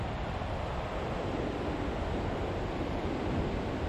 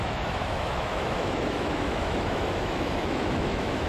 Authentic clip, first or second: first